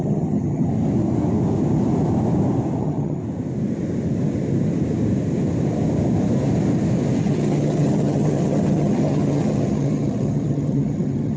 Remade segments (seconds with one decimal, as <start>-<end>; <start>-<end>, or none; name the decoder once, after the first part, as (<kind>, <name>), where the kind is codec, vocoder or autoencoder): 0.0-0.7 (vocoder, HiFi-GAN); 2.8-3.2; 7.2-11.4